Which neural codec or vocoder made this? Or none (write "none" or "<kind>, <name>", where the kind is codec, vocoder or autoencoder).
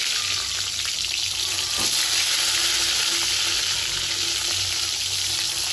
none